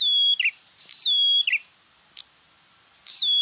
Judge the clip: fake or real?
real